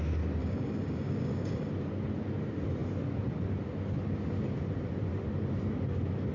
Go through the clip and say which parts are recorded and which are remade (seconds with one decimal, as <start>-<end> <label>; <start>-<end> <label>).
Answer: 0.0-0.4 recorded; 0.4-1.7 remade; 1.7-6.3 recorded

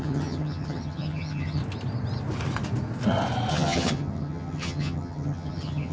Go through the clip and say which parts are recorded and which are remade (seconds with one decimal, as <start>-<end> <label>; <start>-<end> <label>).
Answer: 0.0-1.6 remade; 1.6-3.5 recorded; 3.5-5.9 remade

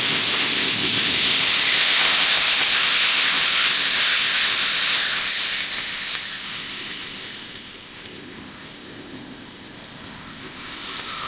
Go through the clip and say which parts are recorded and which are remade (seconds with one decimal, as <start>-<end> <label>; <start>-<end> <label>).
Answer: 0.0-11.3 remade

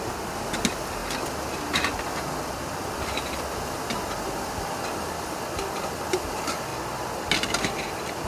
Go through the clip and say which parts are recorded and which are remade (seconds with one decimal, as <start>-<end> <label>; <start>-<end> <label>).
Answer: 0.0-8.3 recorded

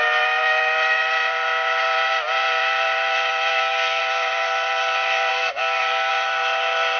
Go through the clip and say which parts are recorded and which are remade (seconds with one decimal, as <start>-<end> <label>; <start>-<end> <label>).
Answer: 0.0-3.5 recorded; 3.5-4.0 remade; 4.0-5.3 recorded; 5.3-6.1 remade; 6.1-7.0 recorded